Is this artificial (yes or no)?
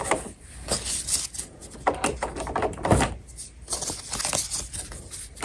no